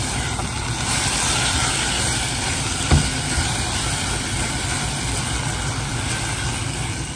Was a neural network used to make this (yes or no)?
no